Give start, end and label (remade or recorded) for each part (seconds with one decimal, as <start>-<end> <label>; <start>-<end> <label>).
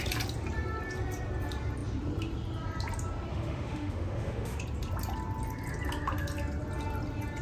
0.0-3.3 recorded; 3.3-4.6 remade; 4.6-7.4 recorded